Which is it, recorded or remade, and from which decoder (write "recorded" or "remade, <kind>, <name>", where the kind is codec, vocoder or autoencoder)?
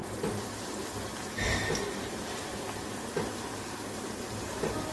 recorded